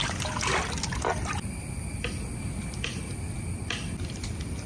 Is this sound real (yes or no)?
yes